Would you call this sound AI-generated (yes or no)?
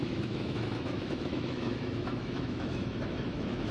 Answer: yes